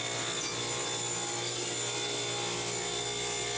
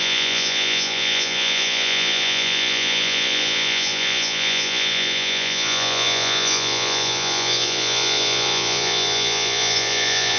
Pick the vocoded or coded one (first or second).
second